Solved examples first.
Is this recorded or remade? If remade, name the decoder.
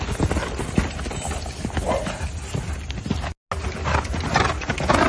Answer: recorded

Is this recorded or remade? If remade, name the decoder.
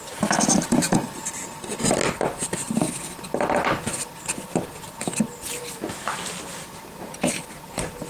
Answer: recorded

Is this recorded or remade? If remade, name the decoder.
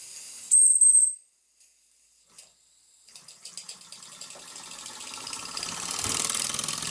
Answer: recorded